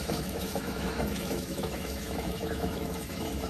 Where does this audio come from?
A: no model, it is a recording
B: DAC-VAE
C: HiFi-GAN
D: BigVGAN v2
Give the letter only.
B